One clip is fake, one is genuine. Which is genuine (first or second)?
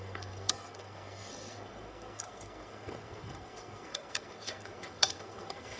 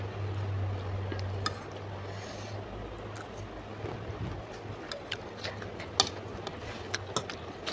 second